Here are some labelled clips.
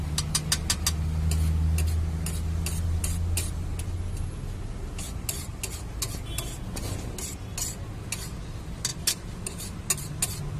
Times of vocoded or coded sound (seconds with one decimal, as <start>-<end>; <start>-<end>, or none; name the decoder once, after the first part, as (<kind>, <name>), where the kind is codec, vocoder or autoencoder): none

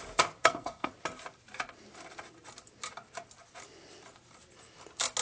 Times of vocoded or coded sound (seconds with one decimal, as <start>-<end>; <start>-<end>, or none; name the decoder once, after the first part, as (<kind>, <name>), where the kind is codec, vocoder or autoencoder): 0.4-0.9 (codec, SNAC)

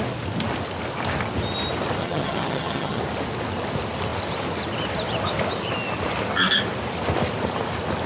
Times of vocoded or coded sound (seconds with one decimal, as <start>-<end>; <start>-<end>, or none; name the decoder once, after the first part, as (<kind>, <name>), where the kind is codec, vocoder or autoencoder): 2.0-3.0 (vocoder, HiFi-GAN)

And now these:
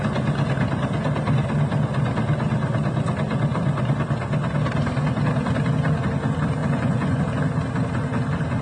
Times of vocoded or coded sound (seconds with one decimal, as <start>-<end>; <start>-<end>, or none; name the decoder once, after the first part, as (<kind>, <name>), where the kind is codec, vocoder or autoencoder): 6.6-7.2 (vocoder, Vocos)

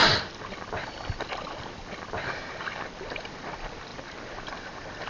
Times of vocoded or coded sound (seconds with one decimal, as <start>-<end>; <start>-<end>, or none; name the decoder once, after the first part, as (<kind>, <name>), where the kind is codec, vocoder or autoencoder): none

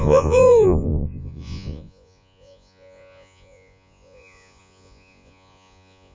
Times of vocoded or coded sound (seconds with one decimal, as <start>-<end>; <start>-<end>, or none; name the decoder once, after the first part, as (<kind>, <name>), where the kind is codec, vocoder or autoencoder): 0.0-6.1 (vocoder, Vocos)